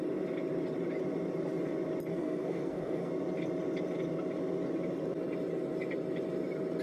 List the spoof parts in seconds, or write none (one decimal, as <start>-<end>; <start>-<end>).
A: 2.1-3.1